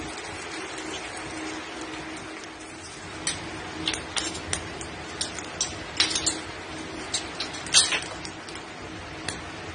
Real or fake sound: real